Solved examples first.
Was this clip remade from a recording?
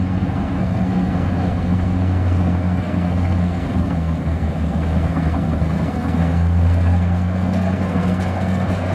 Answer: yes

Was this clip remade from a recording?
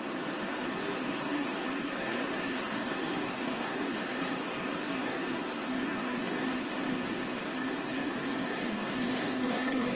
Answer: yes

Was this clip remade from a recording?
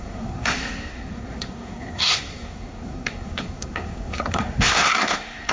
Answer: yes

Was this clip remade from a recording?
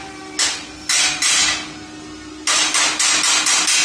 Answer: no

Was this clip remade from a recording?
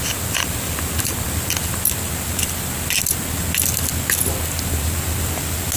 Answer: no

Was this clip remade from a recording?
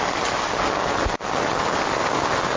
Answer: no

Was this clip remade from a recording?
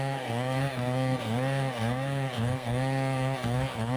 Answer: yes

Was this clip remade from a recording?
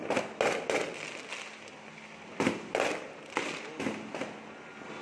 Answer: no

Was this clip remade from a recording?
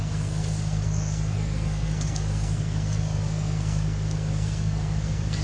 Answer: yes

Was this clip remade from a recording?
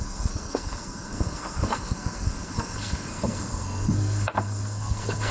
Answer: yes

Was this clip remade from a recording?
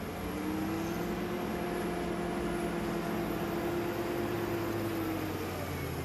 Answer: no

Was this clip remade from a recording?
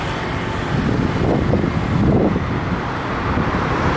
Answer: no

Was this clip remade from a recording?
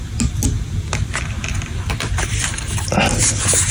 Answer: no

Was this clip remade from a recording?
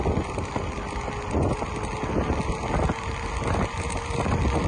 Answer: no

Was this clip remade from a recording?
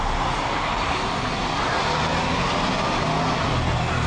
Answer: no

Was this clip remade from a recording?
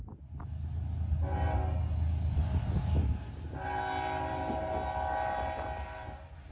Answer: no